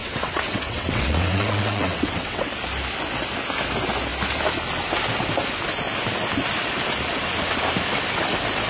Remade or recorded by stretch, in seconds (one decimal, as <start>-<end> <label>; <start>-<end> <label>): 0.0-2.5 remade; 2.5-8.7 recorded